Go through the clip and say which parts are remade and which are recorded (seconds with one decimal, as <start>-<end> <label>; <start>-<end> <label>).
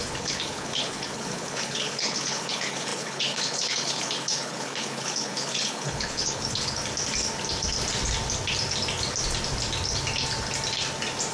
0.0-6.8 remade; 6.8-11.3 recorded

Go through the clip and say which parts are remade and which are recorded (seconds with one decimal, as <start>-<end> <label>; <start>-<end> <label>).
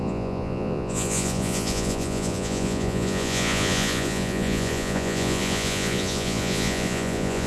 0.0-7.5 remade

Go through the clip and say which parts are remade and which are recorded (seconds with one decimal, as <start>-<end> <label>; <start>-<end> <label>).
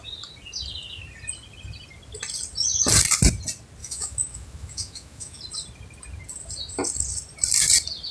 0.0-3.8 recorded; 3.8-5.4 remade; 5.4-8.1 recorded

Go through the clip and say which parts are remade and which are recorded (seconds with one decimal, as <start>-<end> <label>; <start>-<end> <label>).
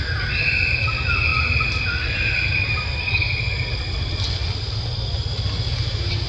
0.0-6.3 recorded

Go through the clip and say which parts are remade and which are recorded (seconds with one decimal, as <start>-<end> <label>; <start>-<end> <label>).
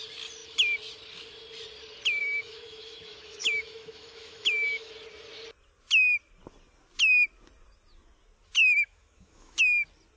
0.0-2.2 recorded; 2.2-4.9 remade; 4.9-8.6 recorded; 8.6-9.6 remade; 9.6-10.2 recorded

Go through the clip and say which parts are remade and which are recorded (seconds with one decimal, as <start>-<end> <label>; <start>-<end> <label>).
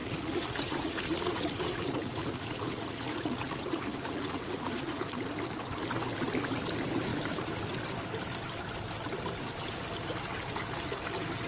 0.0-5.0 remade; 5.0-11.5 recorded